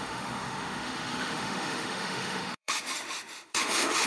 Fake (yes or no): yes